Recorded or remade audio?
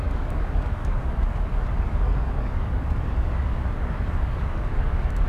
remade